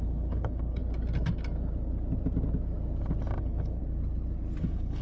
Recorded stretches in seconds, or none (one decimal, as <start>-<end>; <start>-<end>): 0.8-3.4; 3.8-4.6

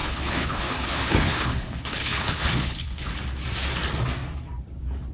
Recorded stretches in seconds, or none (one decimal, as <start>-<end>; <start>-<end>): 3.1-5.1

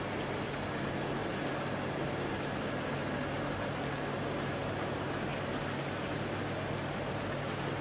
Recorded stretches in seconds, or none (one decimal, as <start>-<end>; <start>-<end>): 0.0-7.8

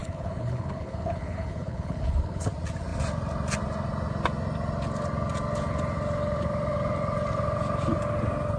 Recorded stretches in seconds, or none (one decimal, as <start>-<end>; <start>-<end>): 2.5-8.6

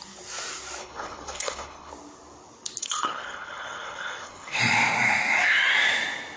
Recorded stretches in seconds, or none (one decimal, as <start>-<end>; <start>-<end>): 0.0-0.8; 1.9-2.8; 4.6-6.4

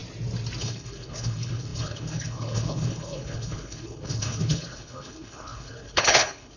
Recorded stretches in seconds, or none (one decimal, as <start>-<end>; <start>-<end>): 0.0-0.6